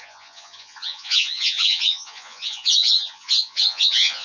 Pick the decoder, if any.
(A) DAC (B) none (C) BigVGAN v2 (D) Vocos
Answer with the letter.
D